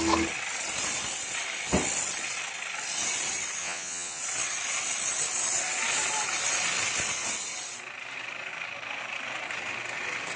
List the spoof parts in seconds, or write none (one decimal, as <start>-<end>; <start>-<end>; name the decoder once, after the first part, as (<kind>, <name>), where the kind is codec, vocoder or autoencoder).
3.6-4.2 (vocoder, Vocos)